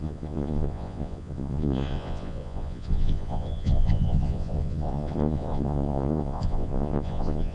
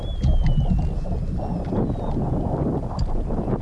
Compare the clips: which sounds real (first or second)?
second